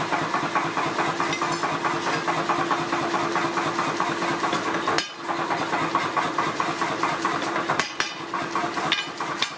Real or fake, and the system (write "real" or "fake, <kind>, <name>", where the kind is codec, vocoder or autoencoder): real